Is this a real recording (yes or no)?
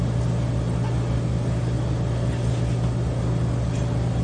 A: yes